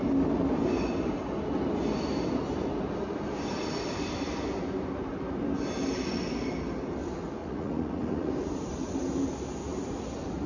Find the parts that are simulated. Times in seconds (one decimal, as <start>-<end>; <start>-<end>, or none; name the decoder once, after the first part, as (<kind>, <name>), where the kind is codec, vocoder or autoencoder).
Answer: 7.4-8.3 (vocoder, Vocos)

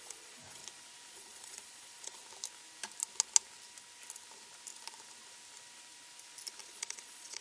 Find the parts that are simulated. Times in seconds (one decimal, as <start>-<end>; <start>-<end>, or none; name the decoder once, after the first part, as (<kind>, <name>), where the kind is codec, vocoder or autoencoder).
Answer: 0.0-0.6 (vocoder, Vocos); 1.1-2.2; 6.6-7.4

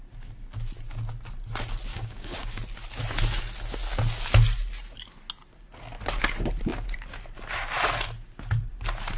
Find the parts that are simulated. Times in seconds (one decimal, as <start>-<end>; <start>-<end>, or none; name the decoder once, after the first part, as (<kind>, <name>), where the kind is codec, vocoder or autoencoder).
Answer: 1.9-2.6 (codec, DAC)

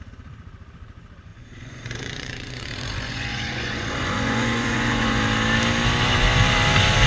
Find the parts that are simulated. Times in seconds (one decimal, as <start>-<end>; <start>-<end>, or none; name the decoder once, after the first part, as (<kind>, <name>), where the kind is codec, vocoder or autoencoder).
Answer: 1.3-5.2 (vocoder, Vocos)

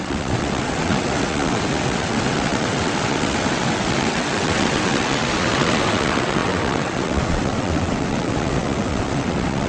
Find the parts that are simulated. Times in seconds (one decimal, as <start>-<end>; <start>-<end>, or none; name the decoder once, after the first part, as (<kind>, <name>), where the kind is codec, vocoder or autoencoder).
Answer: 0.0-9.7 (vocoder, WaveNeXt)